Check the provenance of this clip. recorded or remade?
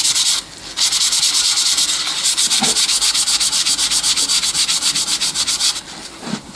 recorded